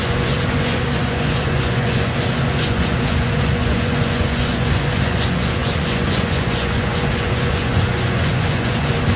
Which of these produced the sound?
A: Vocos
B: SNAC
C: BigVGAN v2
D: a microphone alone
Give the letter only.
A